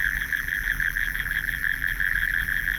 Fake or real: fake